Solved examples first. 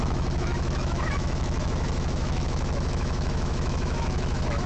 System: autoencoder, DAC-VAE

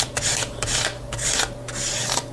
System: none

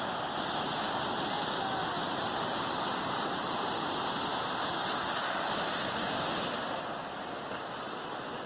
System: none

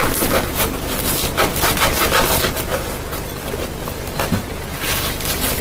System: none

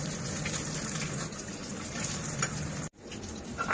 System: none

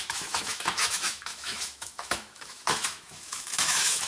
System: autoencoder, DAC-VAE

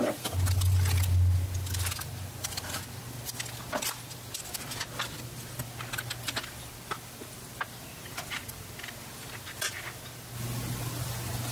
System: none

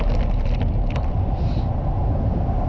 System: none